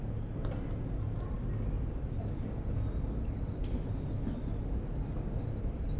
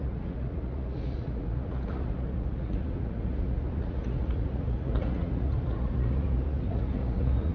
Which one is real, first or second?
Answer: first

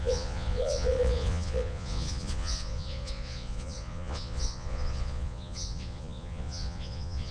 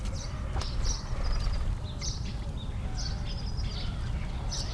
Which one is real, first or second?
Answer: second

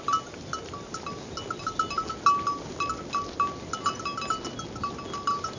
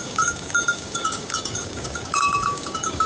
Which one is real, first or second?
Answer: first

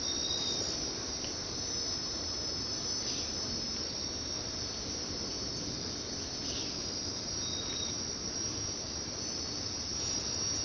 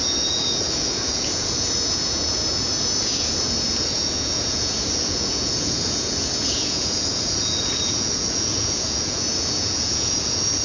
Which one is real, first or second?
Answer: first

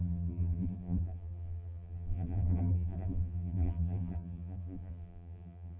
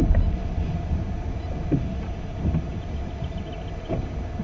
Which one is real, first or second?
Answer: second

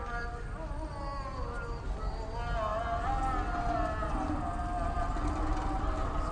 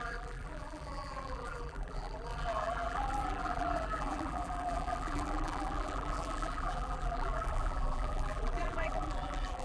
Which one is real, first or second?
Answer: first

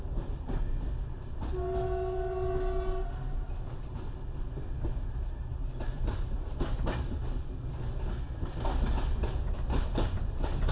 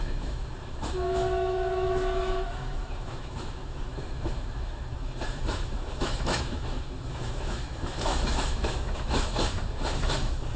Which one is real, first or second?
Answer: first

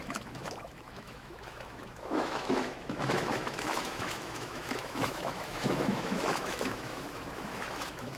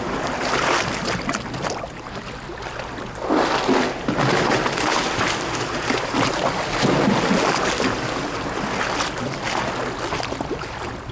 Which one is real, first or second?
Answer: second